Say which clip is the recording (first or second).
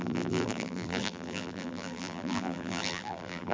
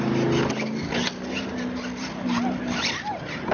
second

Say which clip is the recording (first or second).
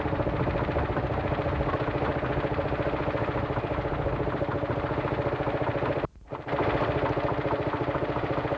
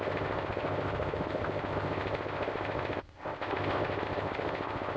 first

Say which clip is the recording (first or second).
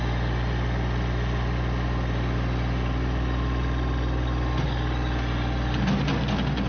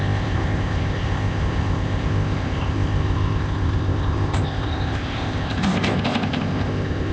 first